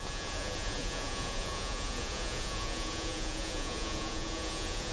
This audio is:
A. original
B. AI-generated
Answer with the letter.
B